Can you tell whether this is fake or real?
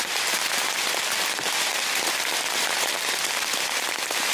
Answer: fake